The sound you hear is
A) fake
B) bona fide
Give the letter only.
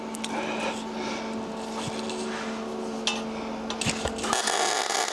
B